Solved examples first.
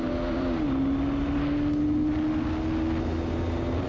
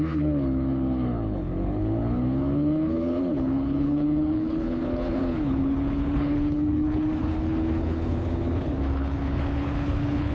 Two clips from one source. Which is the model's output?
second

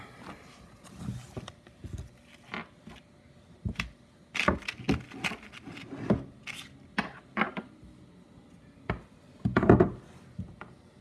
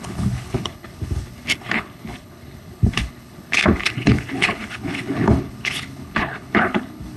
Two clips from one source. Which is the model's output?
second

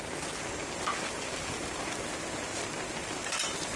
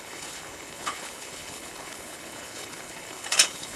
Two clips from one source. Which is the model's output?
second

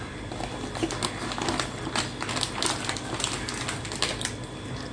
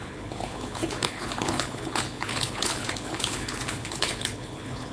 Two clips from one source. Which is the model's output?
second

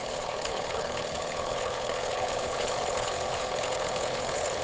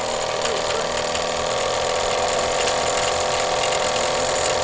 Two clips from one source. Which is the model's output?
first